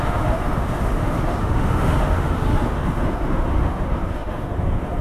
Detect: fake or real fake